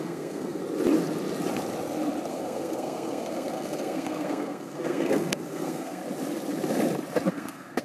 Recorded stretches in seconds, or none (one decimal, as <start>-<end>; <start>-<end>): 0.6-2.3; 6.0-7.3